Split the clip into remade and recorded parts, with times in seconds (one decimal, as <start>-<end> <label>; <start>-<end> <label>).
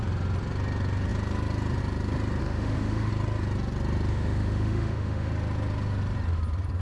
0.0-2.4 recorded; 2.4-3.1 remade; 3.1-4.1 recorded; 4.1-5.3 remade; 5.3-6.8 recorded